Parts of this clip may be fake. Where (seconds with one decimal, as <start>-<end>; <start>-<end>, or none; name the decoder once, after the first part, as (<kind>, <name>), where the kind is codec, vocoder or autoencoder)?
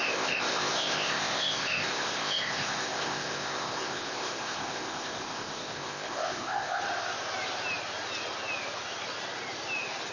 0.0-6.8 (codec, ZipCodec)